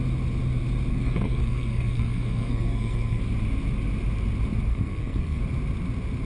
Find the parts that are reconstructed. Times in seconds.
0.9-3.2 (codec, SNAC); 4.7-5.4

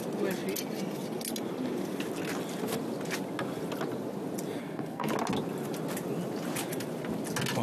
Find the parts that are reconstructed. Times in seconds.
4.6-5.1 (codec, SNAC)

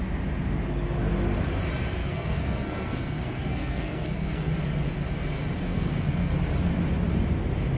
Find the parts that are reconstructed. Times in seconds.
2.0-4.5 (codec, SNAC); 5.7-6.3

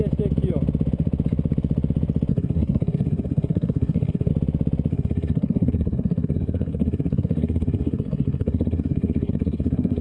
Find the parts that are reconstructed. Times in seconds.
2.3-4.3 (codec, SNAC); 4.9-10.0

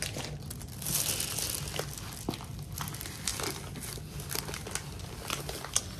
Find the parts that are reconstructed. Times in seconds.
none

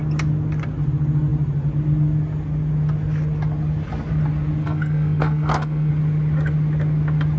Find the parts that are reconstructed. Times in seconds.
4.6-5.9 (codec, SNAC)